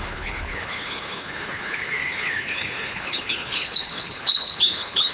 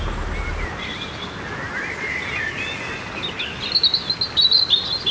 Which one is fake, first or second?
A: first